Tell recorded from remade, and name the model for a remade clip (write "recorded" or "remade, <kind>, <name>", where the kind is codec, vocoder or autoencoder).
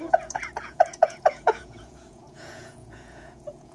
remade, vocoder, Vocos